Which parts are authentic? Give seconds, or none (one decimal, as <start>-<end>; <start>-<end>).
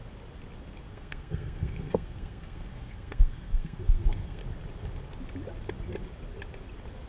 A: 0.0-0.9; 4.4-7.1